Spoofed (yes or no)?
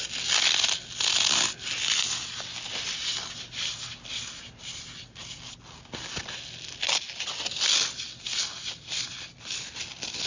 no